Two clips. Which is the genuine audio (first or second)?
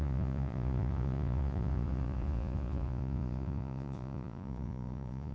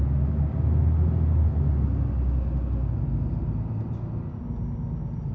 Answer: second